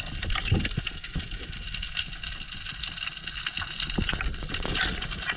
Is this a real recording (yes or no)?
yes